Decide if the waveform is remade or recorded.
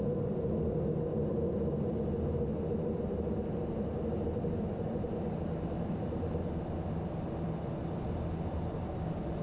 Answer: recorded